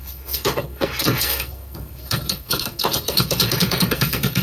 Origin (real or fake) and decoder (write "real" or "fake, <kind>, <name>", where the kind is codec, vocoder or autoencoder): fake, codec, SNAC